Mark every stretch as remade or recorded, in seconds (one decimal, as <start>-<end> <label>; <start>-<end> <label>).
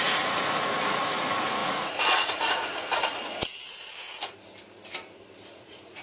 0.0-3.5 remade; 3.5-5.5 recorded; 5.5-6.0 remade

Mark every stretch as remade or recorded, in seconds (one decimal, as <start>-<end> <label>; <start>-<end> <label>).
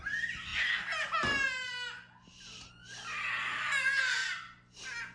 0.0-5.1 recorded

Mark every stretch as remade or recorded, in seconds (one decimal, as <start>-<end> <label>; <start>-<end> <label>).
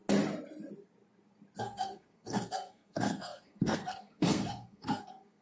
0.0-1.6 recorded; 1.6-5.4 remade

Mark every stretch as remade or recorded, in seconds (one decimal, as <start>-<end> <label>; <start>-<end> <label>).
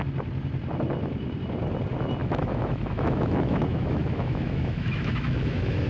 0.0-2.2 recorded; 2.2-5.9 remade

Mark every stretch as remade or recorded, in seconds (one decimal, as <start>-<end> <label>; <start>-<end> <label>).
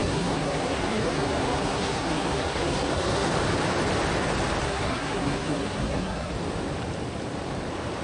0.0-3.3 remade; 3.3-4.6 recorded; 4.6-6.3 remade; 6.3-8.0 recorded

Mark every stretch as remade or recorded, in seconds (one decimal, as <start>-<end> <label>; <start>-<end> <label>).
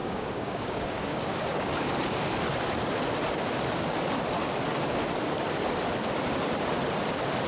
0.0-1.7 remade; 1.7-7.5 recorded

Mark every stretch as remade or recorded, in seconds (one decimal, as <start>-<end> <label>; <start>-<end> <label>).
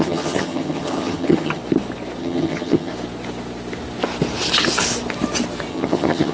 0.0-1.6 remade; 1.6-2.2 recorded; 2.2-2.9 remade; 2.9-5.7 recorded; 5.7-6.3 remade